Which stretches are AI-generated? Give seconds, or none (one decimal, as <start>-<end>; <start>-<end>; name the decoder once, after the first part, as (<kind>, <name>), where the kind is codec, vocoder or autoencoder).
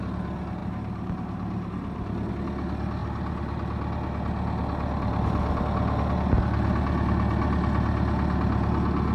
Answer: 0.6-2.3 (vocoder, BigVGAN v2)